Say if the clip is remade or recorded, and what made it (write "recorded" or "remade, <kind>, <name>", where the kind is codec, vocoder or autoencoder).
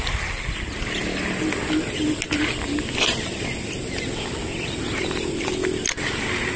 recorded